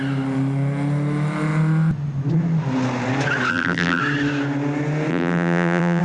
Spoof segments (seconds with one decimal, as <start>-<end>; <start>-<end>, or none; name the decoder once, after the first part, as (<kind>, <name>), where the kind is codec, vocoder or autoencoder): 3.5-4.0 (vocoder, BigVGAN v2); 5.1-6.0